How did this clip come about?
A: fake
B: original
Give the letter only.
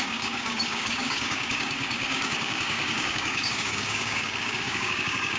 A